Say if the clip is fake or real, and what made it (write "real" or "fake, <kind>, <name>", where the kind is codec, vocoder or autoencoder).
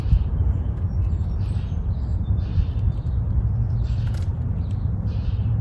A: fake, vocoder, BigVGAN v2